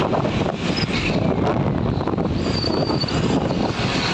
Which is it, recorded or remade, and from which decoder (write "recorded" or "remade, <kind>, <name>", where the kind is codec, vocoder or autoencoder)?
recorded